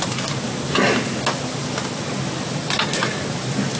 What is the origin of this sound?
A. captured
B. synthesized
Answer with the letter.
A